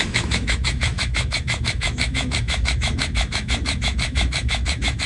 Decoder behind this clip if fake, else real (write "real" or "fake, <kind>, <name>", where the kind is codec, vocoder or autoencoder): fake, autoencoder, DAC-VAE